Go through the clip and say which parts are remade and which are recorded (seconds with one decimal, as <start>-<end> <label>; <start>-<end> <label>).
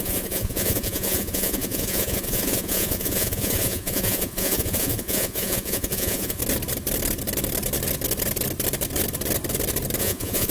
0.0-6.4 remade; 6.4-10.0 recorded; 10.0-10.5 remade